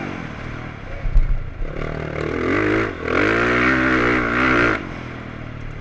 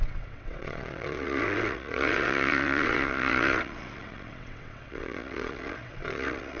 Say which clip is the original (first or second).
first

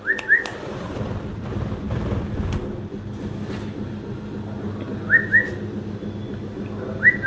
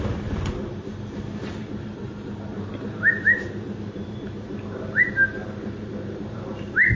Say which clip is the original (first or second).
first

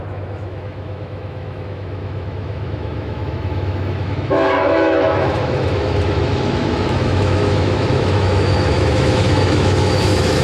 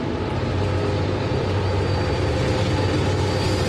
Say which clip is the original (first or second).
second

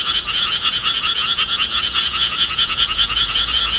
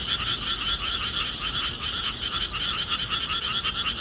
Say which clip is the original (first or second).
second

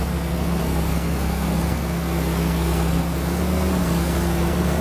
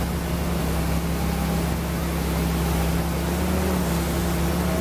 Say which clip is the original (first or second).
second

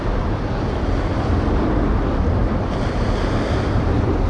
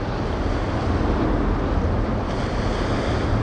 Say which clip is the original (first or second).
second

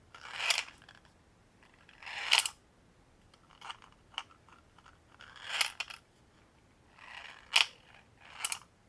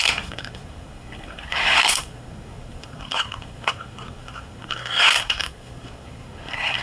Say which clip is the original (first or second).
first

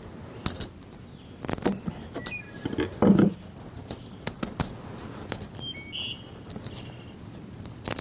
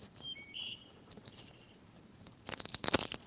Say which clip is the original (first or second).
first